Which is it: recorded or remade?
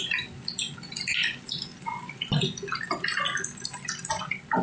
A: recorded